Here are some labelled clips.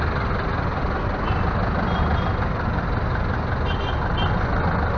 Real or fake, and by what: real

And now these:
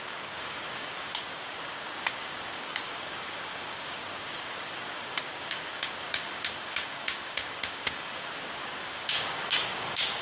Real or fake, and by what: fake, codec, DAC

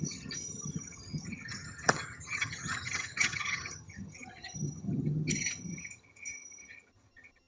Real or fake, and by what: fake, vocoder, HiFi-GAN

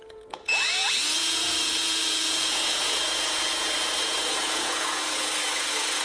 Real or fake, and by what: fake, vocoder, Vocos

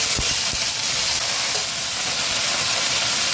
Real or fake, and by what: fake, vocoder, BigVGAN v2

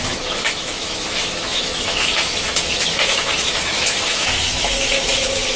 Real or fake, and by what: fake, autoencoder, DAC-VAE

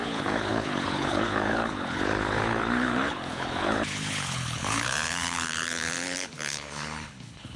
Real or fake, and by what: fake, codec, HILCodec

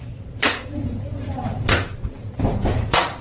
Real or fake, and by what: fake, vocoder, BigVGAN v2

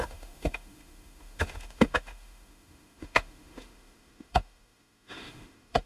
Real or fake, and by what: fake, autoencoder, DAC-VAE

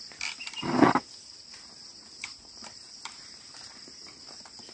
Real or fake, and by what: real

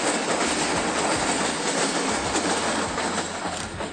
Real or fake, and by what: real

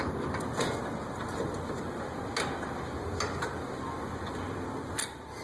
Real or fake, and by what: real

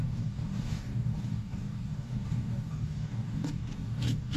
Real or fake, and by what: fake, codec, DAC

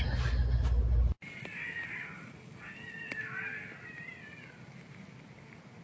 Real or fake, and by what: real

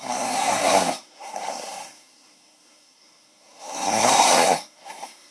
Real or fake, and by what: fake, codec, SNAC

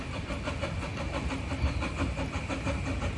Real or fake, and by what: real